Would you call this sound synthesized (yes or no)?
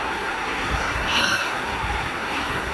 yes